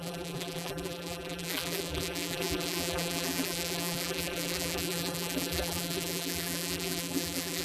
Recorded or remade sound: remade